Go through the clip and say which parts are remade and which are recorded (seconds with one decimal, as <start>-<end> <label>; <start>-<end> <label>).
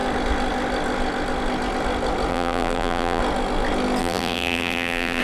0.0-2.3 recorded; 2.3-3.2 remade; 3.2-4.0 recorded; 4.0-5.2 remade